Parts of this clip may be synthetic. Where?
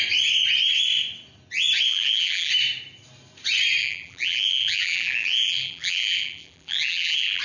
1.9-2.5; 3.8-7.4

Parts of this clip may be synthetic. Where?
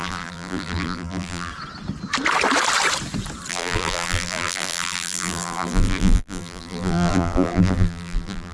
0.0-1.5; 3.5-8.5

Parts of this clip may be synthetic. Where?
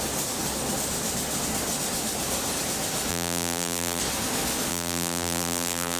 3.1-4.0; 4.7-6.0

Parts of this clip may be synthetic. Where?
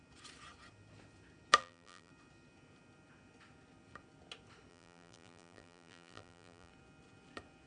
1.6-2.1; 4.7-6.7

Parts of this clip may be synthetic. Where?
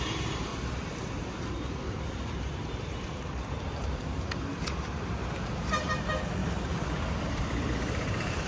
0.0-0.5; 1.2-4.5; 5.6-6.4; 7.2-8.5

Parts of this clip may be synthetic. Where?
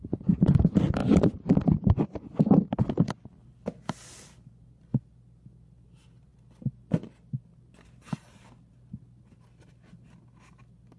none